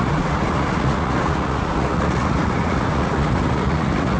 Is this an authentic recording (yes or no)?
no